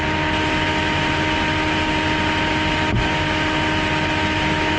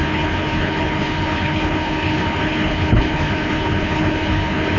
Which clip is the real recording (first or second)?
first